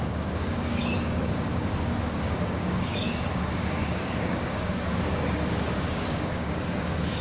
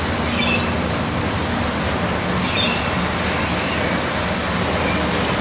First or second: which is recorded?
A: second